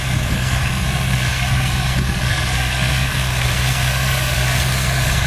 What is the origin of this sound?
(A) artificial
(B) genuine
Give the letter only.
A